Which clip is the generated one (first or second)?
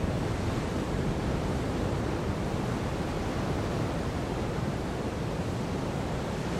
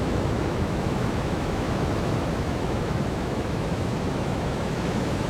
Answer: second